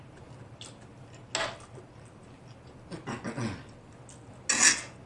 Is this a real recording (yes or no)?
yes